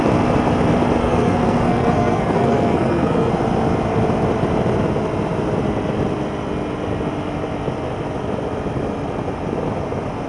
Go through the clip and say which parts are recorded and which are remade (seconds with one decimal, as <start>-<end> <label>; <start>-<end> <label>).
0.0-1.0 recorded; 1.0-3.3 remade; 3.3-10.3 recorded